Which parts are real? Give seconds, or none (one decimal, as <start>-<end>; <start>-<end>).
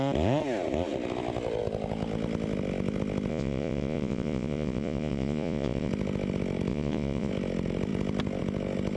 0.0-3.3; 5.9-6.7; 7.3-9.0